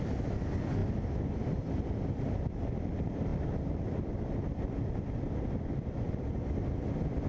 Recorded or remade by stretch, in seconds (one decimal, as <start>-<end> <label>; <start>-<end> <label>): 0.0-7.3 recorded